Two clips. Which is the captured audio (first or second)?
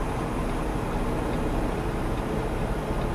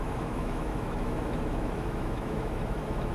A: first